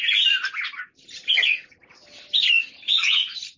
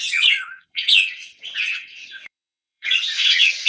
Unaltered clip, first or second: first